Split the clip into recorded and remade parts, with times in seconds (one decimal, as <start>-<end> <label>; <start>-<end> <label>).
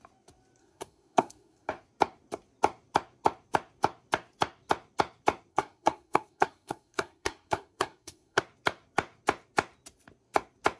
0.0-0.6 recorded; 0.6-1.7 remade; 1.7-5.5 recorded; 5.5-8.4 remade; 8.4-10.8 recorded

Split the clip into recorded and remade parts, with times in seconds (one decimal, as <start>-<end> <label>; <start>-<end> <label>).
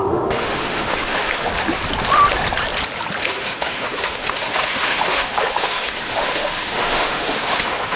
0.0-1.5 remade; 1.5-3.2 recorded; 3.2-8.0 remade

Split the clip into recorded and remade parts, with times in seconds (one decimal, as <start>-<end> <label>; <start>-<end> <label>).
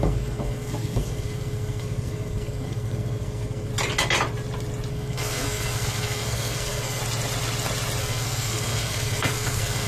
0.0-3.7 remade; 3.7-4.9 recorded; 4.9-7.0 remade; 7.0-8.0 recorded; 8.0-9.9 remade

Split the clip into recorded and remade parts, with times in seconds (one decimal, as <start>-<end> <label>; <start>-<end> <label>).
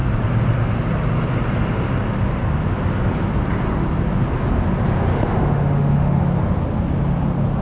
0.0-5.1 recorded; 5.1-6.2 remade; 6.2-7.6 recorded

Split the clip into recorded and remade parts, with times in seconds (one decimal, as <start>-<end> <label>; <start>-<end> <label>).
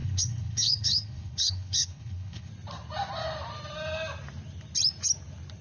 0.0-2.5 remade; 2.5-5.6 recorded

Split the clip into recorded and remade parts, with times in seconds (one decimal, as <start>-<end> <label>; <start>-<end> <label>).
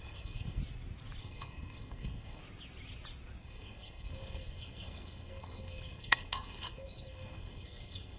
0.0-0.6 remade; 0.6-1.2 recorded; 1.2-2.4 remade; 2.4-3.4 recorded; 3.4-8.2 remade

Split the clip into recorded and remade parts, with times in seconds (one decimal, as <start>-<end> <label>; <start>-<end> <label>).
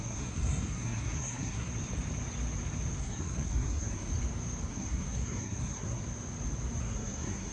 0.0-1.7 remade; 1.7-3.0 recorded; 3.0-4.1 remade; 4.1-4.7 recorded; 4.7-6.0 remade; 6.0-6.8 recorded; 6.8-7.5 remade